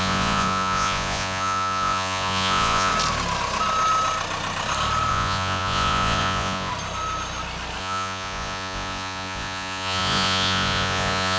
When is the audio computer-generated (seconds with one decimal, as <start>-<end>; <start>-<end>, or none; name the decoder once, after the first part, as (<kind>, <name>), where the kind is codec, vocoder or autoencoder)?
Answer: 0.0-2.9 (vocoder, Vocos); 5.1-6.7; 7.8-11.4